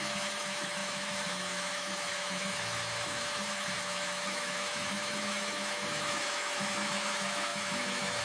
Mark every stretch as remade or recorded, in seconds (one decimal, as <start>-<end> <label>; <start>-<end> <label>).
0.0-8.2 remade